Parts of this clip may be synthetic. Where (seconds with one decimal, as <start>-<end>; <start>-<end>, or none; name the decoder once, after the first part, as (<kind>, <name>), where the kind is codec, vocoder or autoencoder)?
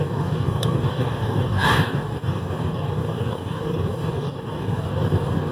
0.0-5.5 (codec, DAC)